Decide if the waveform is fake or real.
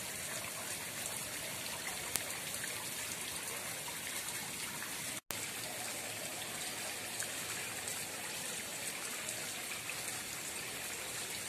real